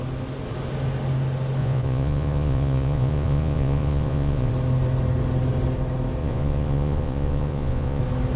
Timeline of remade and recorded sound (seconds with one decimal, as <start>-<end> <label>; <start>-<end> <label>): 0.0-1.6 recorded; 1.6-4.5 remade; 4.5-6.2 recorded; 6.2-8.0 remade; 8.0-8.4 recorded